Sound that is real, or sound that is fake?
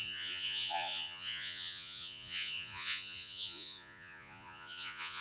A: fake